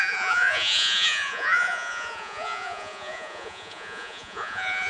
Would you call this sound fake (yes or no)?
yes